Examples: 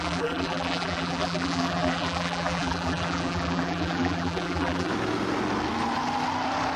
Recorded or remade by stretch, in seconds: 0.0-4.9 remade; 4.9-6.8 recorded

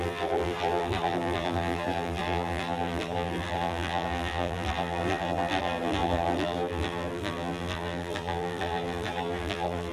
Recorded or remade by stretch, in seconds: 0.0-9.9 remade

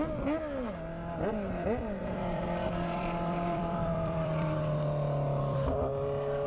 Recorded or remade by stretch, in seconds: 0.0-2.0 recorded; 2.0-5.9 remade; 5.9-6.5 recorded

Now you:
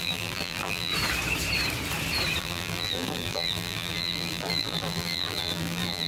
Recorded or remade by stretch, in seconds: 0.0-0.9 remade; 0.9-2.4 recorded; 2.4-6.1 remade

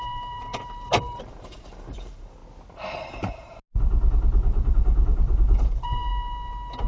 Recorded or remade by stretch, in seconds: 0.0-2.4 remade; 2.4-3.0 recorded; 3.0-3.6 remade; 3.6-4.1 recorded; 4.1-6.1 remade; 6.1-6.9 recorded